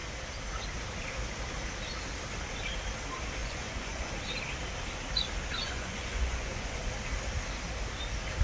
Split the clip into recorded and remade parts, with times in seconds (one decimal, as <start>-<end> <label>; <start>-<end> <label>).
0.0-3.4 recorded; 3.4-4.1 remade; 4.1-5.6 recorded; 5.6-6.8 remade; 6.8-8.4 recorded